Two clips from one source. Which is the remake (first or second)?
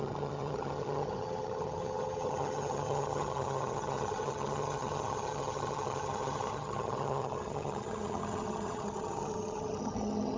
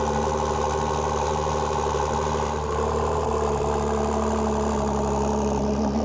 first